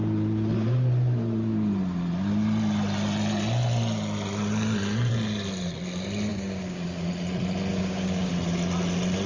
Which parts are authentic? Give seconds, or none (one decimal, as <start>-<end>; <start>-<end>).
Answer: 0.0-6.3; 7.1-7.7; 8.3-9.3